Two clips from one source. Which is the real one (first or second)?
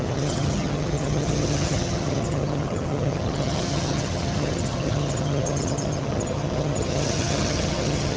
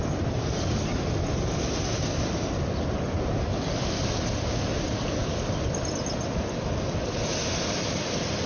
second